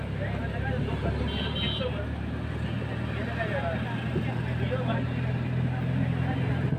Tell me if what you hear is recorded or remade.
recorded